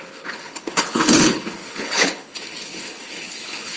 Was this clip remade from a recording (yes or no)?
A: yes